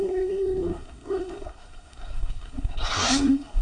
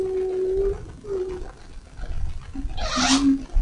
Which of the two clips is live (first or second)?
second